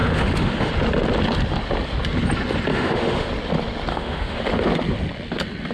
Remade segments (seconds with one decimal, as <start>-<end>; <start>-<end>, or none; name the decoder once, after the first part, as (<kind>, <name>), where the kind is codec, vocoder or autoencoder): 0.0-0.7 (autoencoder, DAC-VAE); 2.7-3.3; 3.9-4.4